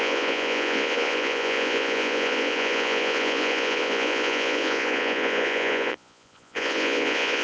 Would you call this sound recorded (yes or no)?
no